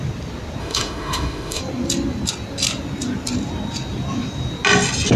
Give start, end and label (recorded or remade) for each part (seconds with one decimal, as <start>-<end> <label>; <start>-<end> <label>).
0.0-0.6 recorded; 0.6-1.6 remade; 1.6-5.2 recorded